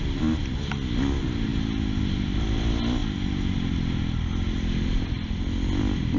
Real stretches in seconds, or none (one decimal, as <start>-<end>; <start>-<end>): 0.0-6.2